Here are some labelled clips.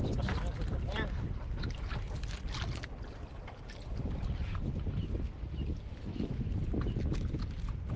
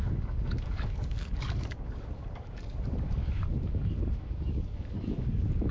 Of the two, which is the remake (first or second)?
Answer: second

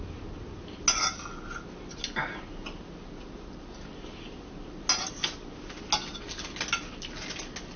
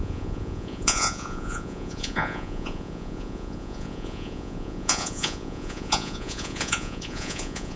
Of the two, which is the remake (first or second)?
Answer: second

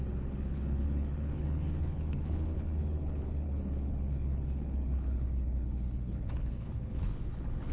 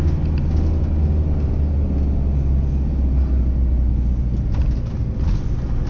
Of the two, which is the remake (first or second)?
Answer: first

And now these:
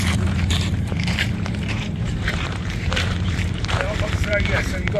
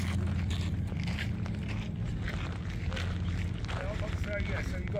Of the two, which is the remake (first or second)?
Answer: first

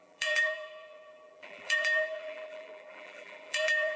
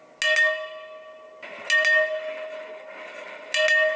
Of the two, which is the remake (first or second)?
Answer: first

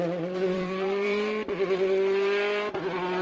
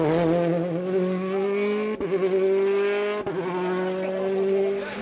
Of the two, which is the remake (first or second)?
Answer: first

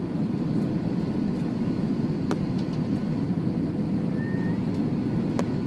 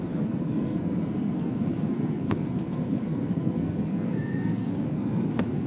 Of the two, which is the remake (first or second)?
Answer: second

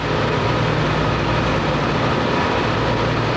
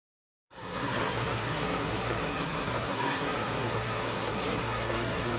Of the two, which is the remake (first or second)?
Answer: second